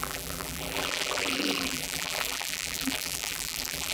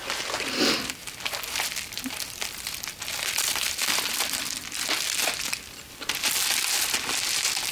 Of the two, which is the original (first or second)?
second